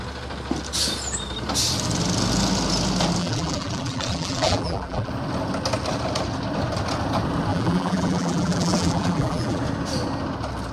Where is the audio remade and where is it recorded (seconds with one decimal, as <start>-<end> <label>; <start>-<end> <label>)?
0.0-3.2 recorded; 3.2-5.1 remade; 5.1-7.5 recorded; 7.5-9.6 remade; 9.6-10.7 recorded